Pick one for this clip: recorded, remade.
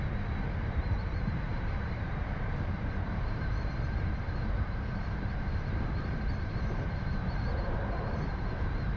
remade